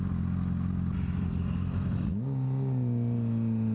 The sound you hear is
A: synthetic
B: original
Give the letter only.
B